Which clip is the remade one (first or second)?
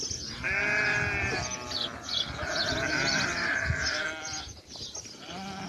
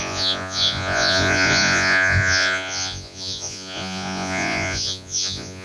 second